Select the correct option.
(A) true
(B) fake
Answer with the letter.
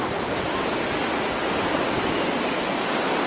A